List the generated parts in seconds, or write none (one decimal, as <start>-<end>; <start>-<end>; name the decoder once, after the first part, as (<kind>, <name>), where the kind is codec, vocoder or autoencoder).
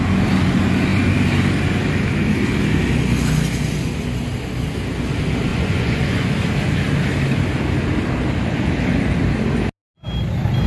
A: 5.5-6.3 (vocoder, Vocos)